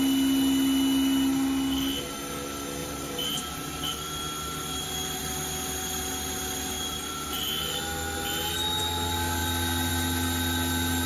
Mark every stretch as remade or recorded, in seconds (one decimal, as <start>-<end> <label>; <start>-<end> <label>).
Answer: 0.0-2.8 recorded; 2.8-3.7 remade; 3.7-11.1 recorded

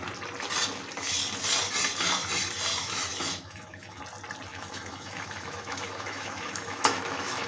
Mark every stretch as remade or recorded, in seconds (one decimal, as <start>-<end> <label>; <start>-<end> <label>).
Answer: 0.0-2.7 recorded; 2.7-4.0 remade; 4.0-4.5 recorded; 4.5-7.5 remade

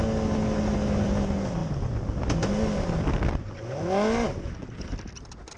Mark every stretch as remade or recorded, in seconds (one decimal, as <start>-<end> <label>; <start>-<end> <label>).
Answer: 0.0-5.6 recorded

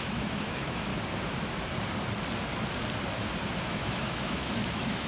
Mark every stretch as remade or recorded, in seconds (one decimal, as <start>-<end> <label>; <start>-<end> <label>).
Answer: 0.0-0.9 remade; 0.9-3.6 recorded; 3.6-5.1 remade

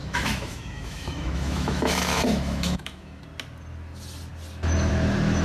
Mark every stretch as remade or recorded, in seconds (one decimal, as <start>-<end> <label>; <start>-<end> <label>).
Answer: 0.0-3.2 remade; 3.2-5.4 recorded